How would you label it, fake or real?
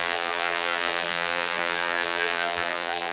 fake